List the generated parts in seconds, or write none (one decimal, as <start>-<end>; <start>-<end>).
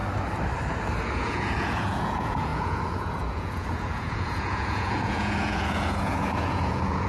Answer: 1.0-7.1